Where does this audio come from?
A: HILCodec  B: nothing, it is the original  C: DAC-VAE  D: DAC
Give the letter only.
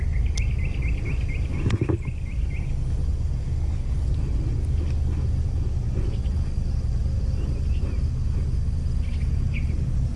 B